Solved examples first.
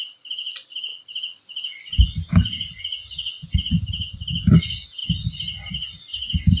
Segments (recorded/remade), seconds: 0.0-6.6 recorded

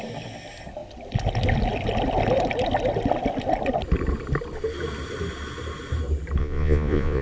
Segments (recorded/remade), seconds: 0.0-6.4 recorded; 6.4-7.2 remade

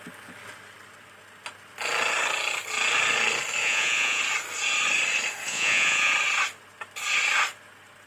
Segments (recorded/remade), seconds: 0.0-3.6 recorded; 3.6-4.2 remade; 4.2-5.5 recorded; 5.5-6.1 remade; 6.1-8.1 recorded